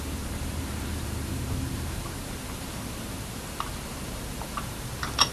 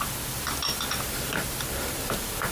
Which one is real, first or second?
second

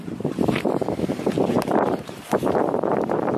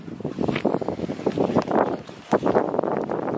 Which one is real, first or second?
second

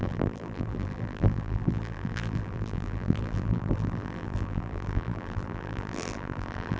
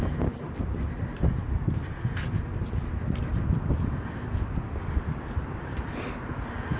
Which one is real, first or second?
second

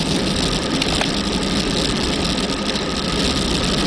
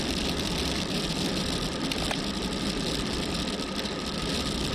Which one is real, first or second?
first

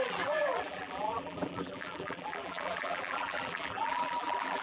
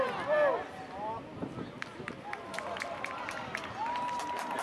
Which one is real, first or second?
second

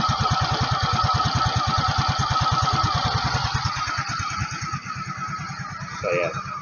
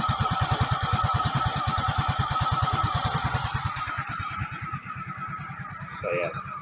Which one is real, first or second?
first